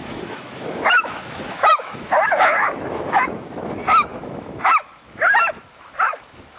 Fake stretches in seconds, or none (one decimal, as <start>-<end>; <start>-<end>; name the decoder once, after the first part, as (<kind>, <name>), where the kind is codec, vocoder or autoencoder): 0.0-6.6 (autoencoder, DAC-VAE)